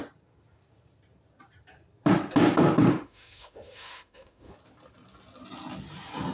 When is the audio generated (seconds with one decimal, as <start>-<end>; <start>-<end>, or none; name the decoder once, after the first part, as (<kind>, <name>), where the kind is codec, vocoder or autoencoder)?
2.9-4.5 (autoencoder, DAC-VAE)